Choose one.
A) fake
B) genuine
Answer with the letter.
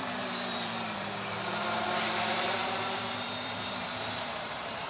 A